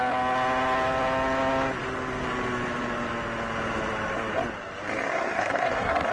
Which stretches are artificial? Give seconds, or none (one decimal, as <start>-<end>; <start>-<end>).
5.1-6.1

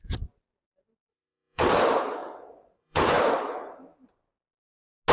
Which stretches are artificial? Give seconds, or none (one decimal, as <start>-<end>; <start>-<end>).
1.1-1.7; 2.2-3.2

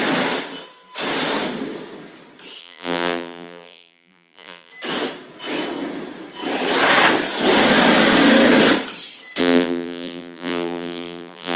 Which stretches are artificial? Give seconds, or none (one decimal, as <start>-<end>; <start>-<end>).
2.6-4.7; 9.4-11.6

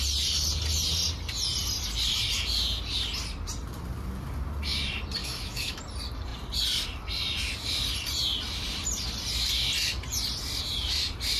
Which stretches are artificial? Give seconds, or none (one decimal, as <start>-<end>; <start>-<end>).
5.2-5.8